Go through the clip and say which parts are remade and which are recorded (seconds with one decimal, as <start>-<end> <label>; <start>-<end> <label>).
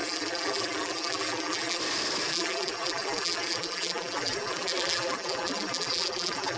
0.0-1.8 remade; 1.8-2.3 recorded; 2.3-6.6 remade